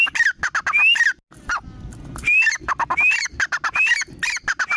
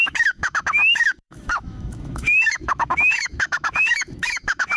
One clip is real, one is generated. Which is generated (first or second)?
second